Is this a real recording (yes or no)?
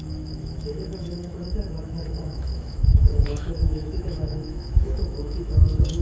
no